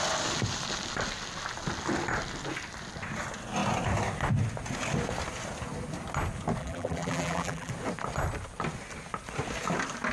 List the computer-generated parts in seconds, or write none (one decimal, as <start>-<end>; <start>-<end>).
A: 6.6-7.7